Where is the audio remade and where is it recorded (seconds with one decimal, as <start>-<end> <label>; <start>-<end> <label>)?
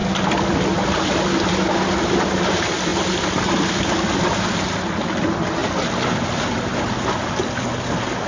0.0-8.3 recorded